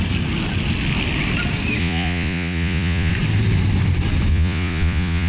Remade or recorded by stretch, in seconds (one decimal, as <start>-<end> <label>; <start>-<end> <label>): 0.0-1.8 recorded; 1.8-3.1 remade; 3.1-4.3 recorded; 4.3-5.3 remade